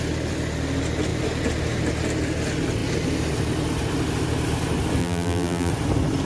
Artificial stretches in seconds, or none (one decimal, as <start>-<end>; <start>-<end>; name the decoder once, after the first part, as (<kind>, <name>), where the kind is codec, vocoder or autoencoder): 5.0-5.7 (vocoder, BigVGAN v2)